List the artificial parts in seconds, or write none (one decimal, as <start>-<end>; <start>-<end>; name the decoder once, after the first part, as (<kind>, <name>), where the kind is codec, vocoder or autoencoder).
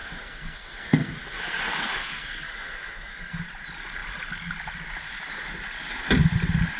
0.0-3.4 (codec, SNAC)